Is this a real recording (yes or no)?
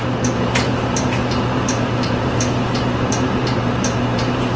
no